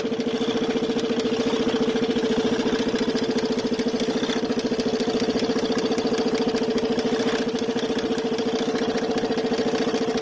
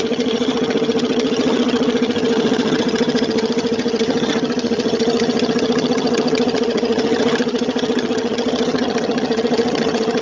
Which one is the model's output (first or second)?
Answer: second